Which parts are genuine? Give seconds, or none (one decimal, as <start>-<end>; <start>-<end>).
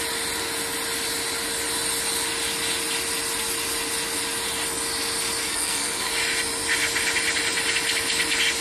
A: 0.0-5.4; 6.1-8.6